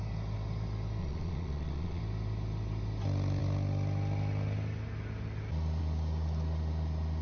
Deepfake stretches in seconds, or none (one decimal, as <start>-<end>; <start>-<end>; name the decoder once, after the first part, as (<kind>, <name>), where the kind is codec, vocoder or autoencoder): 1.0-2.0 (vocoder, Vocos)